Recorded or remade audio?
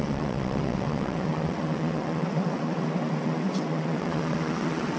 remade